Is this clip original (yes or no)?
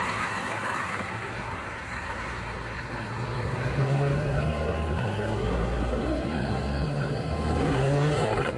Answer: no